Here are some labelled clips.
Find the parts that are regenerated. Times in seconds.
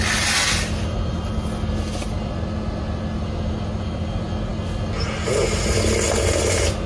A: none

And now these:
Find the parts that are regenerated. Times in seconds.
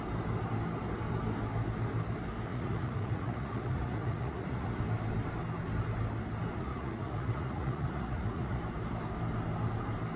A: 2.5-4.8 (vocoder, Vocos); 6.5-8.6